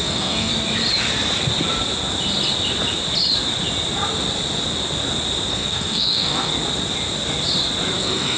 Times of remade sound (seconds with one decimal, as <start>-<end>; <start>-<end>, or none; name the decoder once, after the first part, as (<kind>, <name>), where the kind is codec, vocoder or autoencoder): 0.0-0.5 (codec, SNAC); 5.5-6.5; 8.0-8.4